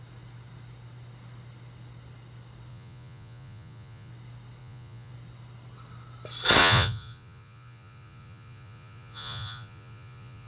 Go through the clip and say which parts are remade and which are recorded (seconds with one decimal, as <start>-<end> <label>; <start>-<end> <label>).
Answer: 0.0-2.7 recorded; 2.7-4.1 remade; 4.1-4.6 recorded; 4.6-5.1 remade; 5.1-6.6 recorded; 6.6-10.5 remade